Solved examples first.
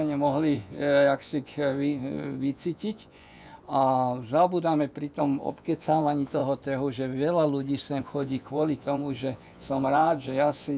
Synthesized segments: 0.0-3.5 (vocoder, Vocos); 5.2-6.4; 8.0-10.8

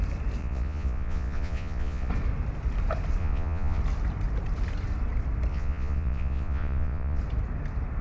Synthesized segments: 0.4-2.1 (vocoder, Vocos); 3.2-3.8; 5.5-7.2

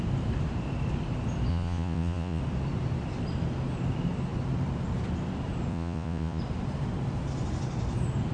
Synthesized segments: 1.5-2.4 (vocoder, Vocos); 5.7-6.4